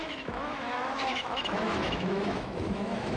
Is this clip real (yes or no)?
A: no